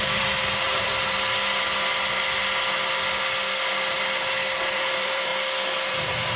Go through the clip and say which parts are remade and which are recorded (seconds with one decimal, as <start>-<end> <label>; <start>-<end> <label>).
0.0-0.9 remade; 0.9-4.6 recorded; 4.6-5.3 remade; 5.3-5.9 recorded; 5.9-6.4 remade